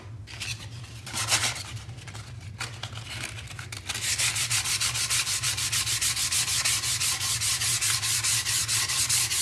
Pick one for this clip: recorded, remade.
recorded